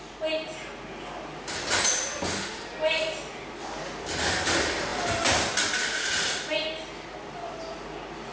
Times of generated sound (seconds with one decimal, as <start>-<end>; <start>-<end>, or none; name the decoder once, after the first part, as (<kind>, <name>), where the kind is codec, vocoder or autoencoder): none